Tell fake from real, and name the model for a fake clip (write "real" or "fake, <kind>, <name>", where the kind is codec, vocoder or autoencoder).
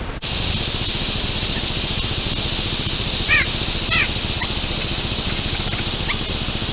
real